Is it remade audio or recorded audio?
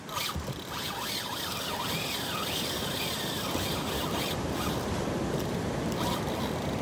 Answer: remade